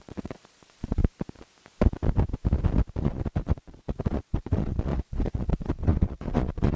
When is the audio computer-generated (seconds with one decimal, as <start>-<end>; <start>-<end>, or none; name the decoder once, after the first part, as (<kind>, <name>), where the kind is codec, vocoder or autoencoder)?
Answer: 0.0-1.0 (vocoder, Vocos); 3.0-6.8